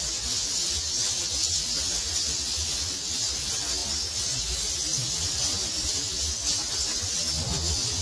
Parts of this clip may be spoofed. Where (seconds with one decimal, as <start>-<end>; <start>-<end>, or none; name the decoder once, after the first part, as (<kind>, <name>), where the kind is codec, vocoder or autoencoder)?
none